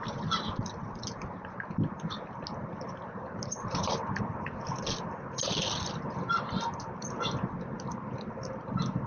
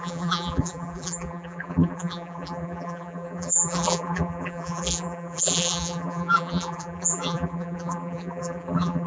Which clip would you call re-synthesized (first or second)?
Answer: second